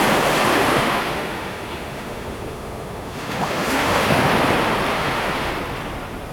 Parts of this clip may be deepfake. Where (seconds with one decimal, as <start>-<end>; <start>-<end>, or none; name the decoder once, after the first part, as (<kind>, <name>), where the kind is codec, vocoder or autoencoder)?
0.5-4.3 (autoencoder, DAC-VAE); 4.9-5.5